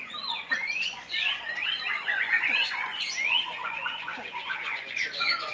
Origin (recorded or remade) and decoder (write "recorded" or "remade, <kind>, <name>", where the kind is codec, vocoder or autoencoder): remade, vocoder, Vocos